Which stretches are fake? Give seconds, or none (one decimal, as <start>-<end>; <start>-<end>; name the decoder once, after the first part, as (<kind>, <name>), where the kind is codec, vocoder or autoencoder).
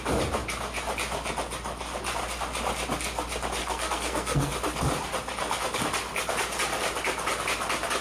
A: 3.6-4.5 (codec, SNAC)